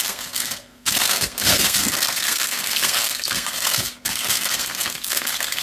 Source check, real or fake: fake